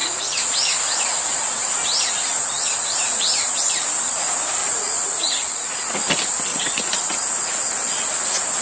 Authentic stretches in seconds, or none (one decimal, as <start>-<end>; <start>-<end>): 1.2-2.3; 3.5-4.6; 6.1-6.5; 7.6-8.6